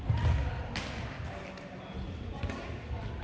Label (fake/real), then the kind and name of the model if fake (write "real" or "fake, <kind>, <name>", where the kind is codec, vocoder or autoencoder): real